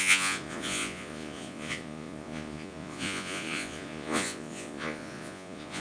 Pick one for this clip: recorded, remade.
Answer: remade